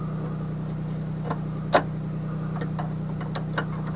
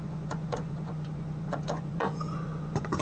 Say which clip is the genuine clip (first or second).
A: first